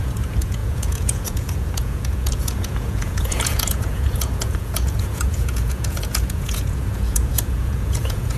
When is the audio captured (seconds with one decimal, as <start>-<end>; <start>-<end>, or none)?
none